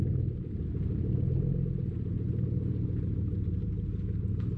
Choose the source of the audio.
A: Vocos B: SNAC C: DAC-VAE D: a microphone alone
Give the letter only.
D